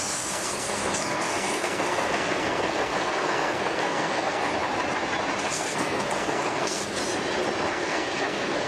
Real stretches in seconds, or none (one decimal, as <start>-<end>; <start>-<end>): 4.5-5.5; 7.0-7.7